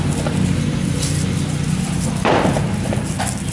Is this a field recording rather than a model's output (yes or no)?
yes